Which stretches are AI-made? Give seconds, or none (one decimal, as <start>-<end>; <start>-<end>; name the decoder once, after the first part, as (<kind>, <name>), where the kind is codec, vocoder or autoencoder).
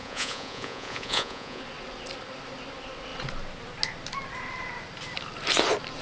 0.0-1.6 (vocoder, Vocos)